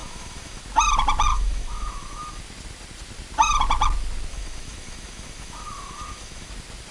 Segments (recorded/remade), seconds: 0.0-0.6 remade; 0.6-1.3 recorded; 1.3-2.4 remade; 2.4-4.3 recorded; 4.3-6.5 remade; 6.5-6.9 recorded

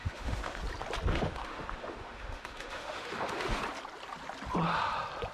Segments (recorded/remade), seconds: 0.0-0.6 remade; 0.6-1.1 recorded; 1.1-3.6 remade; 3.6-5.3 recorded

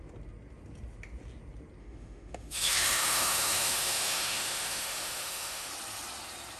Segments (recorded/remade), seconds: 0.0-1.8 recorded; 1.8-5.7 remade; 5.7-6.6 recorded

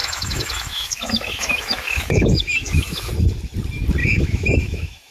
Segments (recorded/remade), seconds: 0.0-3.1 remade; 3.1-4.0 recorded; 4.0-5.1 remade

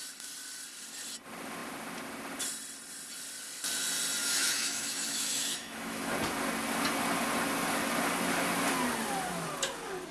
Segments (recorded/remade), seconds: 0.0-4.2 recorded; 4.2-6.1 remade; 6.1-10.1 recorded

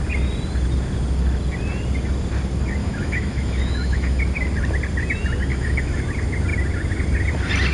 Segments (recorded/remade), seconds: 0.0-2.8 recorded; 2.8-4.2 remade; 4.2-5.5 recorded; 5.5-6.0 remade; 6.0-7.7 recorded

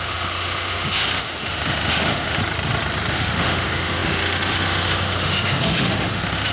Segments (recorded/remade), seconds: 0.0-2.4 remade; 2.4-3.1 recorded; 3.1-6.5 remade